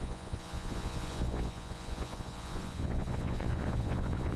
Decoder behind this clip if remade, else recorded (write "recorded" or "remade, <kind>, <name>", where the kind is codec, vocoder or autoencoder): remade, vocoder, Vocos